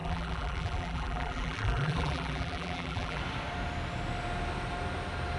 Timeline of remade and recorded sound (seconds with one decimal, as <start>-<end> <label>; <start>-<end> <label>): 0.0-3.2 remade; 3.2-5.4 recorded